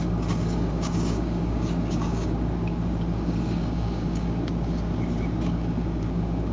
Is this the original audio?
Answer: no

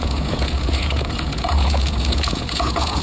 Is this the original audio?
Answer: no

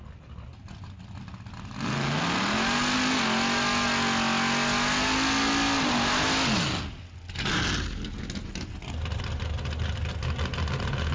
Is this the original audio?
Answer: yes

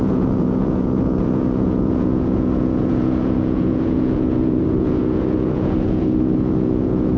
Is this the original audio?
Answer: no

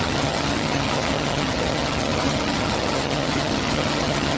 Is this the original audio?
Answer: no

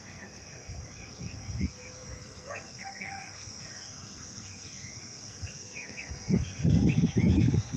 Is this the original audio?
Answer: no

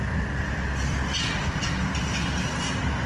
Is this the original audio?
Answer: yes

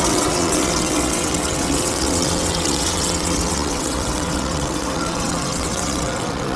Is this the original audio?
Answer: no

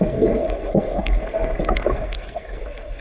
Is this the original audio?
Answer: no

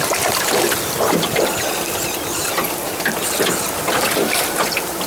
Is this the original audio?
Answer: yes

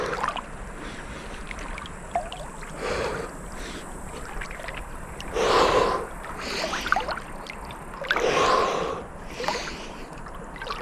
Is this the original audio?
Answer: yes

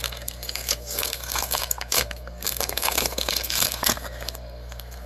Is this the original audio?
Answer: no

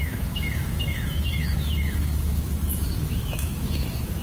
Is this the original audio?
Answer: no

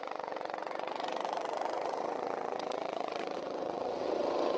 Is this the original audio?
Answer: no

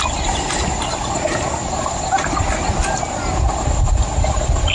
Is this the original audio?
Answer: yes